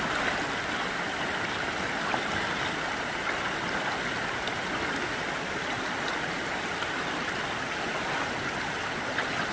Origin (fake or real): real